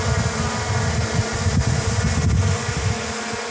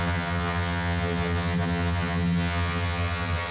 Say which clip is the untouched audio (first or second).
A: first